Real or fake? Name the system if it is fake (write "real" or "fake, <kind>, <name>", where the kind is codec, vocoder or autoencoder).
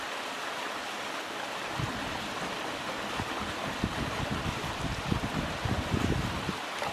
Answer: real